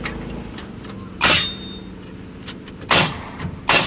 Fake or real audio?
real